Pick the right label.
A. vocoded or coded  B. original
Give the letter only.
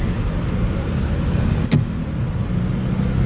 B